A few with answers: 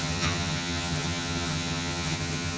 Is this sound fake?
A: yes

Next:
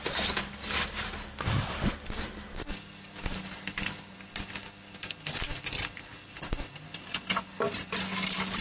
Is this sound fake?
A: no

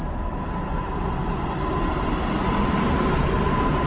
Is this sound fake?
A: no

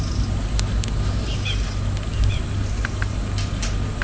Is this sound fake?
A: no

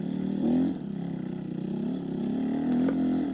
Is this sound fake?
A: no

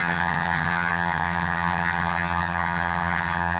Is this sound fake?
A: yes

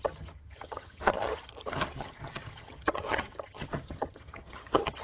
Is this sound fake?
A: yes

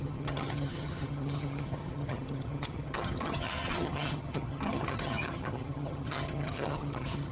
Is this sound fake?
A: yes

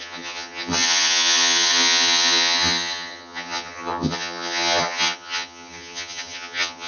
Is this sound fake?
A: yes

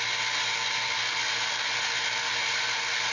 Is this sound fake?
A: no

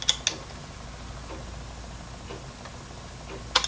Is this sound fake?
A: no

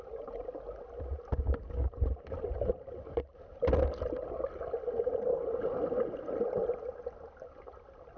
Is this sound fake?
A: no